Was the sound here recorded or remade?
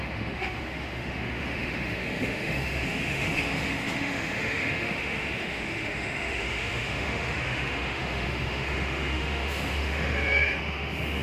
remade